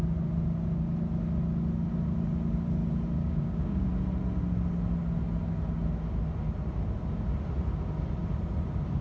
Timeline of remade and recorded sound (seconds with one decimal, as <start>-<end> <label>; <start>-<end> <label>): 0.0-3.2 recorded; 3.2-3.9 remade; 3.9-9.0 recorded